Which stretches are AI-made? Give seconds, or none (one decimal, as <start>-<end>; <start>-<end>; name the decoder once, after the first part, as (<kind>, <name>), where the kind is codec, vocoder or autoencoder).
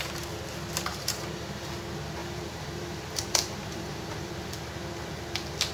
0.9-1.7 (vocoder, BigVGAN v2); 2.2-4.3